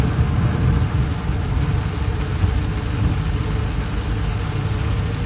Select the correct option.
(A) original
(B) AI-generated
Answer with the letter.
A